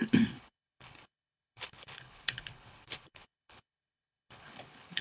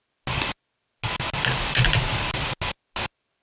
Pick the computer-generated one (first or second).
first